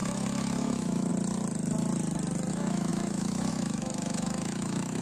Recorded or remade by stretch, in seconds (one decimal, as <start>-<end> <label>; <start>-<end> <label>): 0.0-1.1 remade; 1.1-2.5 recorded; 2.5-5.0 remade